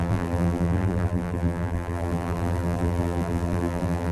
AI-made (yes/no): yes